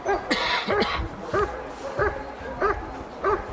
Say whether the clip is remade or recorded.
recorded